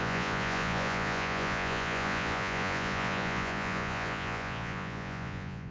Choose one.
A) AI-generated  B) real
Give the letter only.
A